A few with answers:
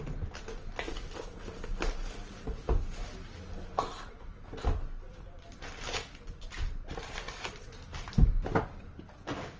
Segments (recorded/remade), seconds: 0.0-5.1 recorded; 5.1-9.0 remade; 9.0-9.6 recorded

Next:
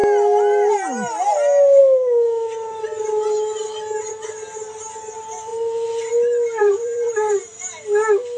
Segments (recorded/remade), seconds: 0.0-6.6 recorded; 6.6-7.6 remade; 7.6-8.4 recorded

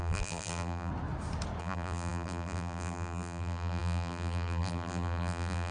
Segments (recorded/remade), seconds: 0.0-0.9 remade; 0.9-1.6 recorded; 1.6-5.7 remade

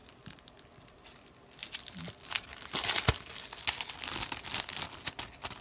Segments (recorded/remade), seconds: 0.0-0.5 remade; 0.5-5.6 recorded

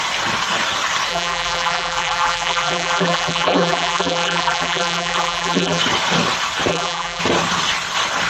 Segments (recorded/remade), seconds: 0.0-1.1 recorded; 1.1-5.8 remade; 5.8-6.7 recorded; 6.7-7.2 remade; 7.2-8.3 recorded

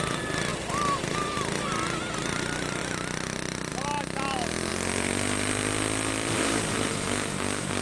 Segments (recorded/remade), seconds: 0.0-0.5 recorded; 0.5-1.6 remade; 1.6-4.7 recorded; 4.7-7.8 remade

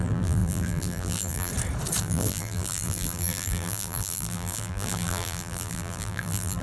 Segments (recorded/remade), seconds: 0.0-1.5 remade; 1.5-2.0 recorded; 2.0-6.6 remade